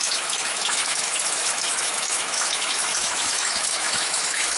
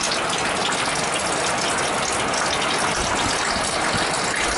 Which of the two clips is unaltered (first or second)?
second